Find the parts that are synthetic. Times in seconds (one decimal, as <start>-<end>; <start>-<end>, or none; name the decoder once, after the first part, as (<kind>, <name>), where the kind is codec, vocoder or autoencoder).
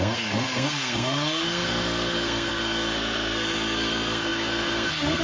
0.0-5.2 (codec, SNAC)